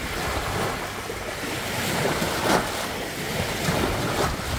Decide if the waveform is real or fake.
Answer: real